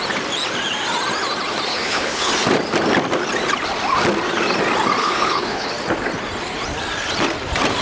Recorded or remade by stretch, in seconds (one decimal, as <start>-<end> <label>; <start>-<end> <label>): 0.0-1.7 recorded; 1.7-2.3 remade; 2.3-5.0 recorded; 5.0-5.7 remade; 5.7-7.8 recorded

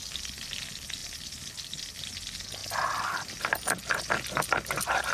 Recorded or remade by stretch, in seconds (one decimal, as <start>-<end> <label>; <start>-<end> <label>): 0.0-5.1 recorded

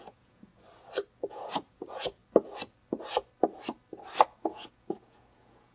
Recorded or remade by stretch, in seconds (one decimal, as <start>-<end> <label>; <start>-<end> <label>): 0.0-0.5 remade; 0.5-1.3 recorded; 1.3-2.2 remade; 2.2-4.4 recorded; 4.4-5.7 remade

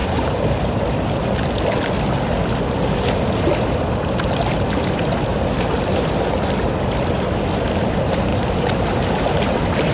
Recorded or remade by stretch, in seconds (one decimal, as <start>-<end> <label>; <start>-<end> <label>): 0.0-0.8 remade; 0.8-5.3 recorded; 5.3-6.1 remade; 6.1-8.3 recorded; 8.3-9.9 remade

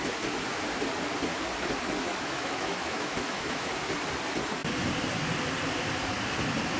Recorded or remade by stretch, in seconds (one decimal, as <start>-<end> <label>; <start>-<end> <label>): 0.0-2.1 recorded; 2.1-3.7 remade; 3.7-6.8 recorded

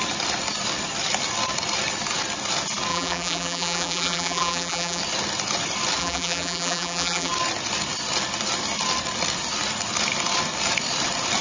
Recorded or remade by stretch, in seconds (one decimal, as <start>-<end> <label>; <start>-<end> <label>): 0.0-2.9 recorded; 2.9-5.0 remade; 5.0-6.0 recorded; 6.0-7.3 remade; 7.3-11.4 recorded

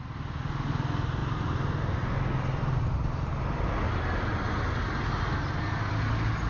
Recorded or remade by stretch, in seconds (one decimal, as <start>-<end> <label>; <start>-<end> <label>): 0.0-6.5 recorded